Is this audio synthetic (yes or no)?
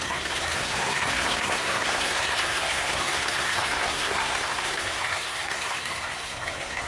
yes